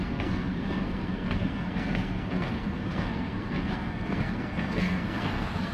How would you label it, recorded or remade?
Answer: remade